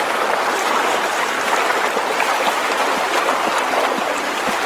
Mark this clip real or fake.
real